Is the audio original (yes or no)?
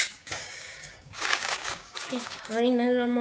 no